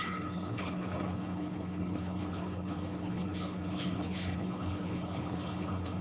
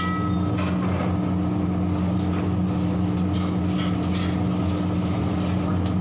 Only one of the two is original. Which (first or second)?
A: second